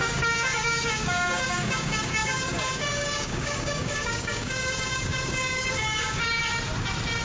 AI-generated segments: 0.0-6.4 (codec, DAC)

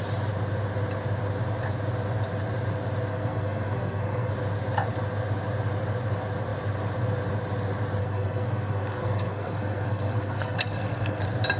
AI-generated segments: 3.1-4.3 (codec, SNAC); 8.0-11.2

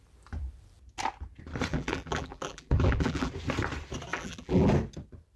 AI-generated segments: 1.7-3.3 (vocoder, BigVGAN v2); 4.1-4.7

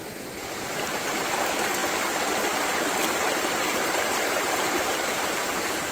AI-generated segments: 3.7-5.9 (vocoder, BigVGAN v2)

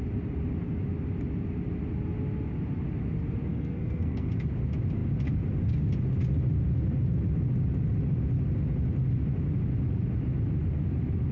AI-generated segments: 3.5-4.3 (codec, SNAC)

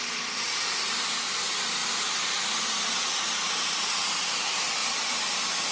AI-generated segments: 1.8-2.9 (vocoder, BigVGAN v2); 4.8-5.7

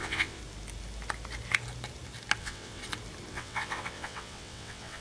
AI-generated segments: 0.0-0.4 (vocoder, WaveNeXt); 2.4-2.8; 3.3-5.0

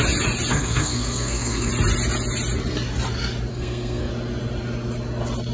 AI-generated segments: 0.5-1.7 (codec, SNAC); 3.5-4.1